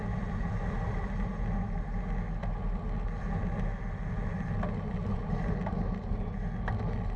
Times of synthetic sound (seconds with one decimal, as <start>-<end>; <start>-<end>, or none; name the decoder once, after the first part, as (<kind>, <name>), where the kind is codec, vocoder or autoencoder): none